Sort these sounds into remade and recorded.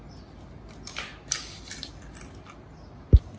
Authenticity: recorded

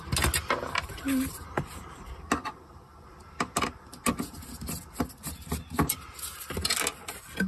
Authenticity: recorded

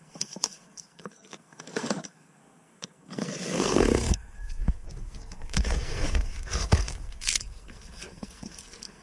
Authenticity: remade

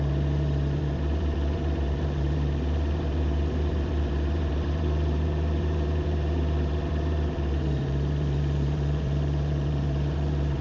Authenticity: remade